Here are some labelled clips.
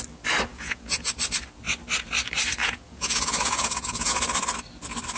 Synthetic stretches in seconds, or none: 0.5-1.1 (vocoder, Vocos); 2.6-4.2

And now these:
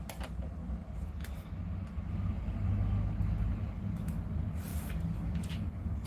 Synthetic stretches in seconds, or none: 4.7-6.1 (codec, DAC)

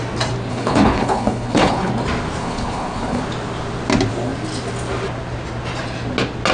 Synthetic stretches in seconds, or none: 0.5-1.9 (codec, HILCodec); 2.4-3.2

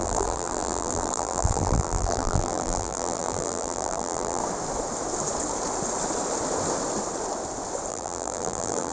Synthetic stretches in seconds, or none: 0.0-4.4 (vocoder, BigVGAN v2); 7.9-8.9